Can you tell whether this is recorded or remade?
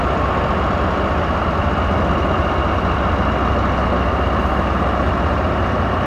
recorded